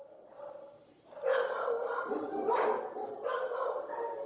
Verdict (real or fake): real